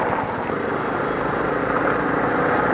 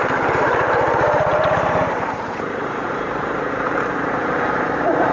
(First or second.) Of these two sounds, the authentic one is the first